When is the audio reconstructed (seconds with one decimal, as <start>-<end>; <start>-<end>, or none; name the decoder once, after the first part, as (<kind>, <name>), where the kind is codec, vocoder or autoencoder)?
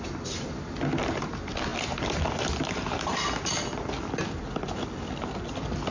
none